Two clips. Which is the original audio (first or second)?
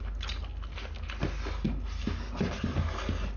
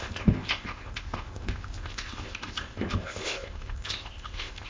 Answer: first